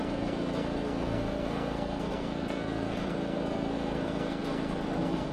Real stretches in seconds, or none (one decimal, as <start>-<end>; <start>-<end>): none